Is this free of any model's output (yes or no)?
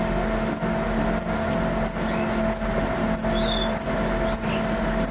yes